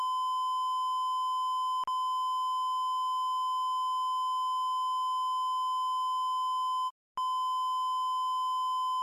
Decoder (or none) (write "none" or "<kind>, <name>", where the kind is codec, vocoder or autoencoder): none